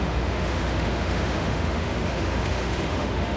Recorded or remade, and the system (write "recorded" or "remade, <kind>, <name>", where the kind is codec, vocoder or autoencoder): remade, autoencoder, DAC-VAE